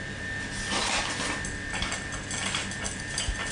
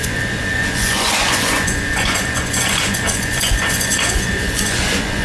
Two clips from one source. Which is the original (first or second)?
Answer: first